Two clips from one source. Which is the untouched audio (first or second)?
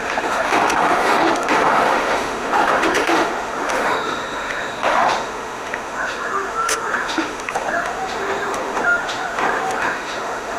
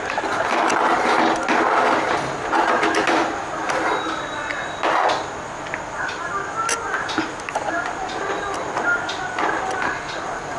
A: second